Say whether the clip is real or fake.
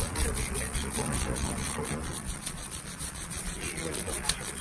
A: fake